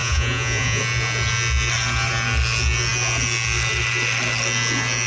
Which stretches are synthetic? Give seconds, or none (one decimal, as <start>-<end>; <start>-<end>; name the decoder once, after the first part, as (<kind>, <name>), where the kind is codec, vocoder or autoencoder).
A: 0.0-0.8 (vocoder, Vocos)